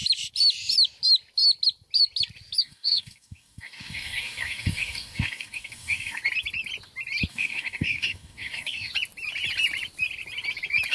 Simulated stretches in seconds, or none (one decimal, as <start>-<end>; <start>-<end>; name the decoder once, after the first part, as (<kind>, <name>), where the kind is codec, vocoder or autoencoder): 2.6-6.2 (codec, DAC); 7.3-8.9